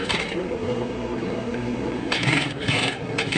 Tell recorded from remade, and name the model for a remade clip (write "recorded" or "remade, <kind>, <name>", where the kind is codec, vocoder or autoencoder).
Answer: remade, codec, SNAC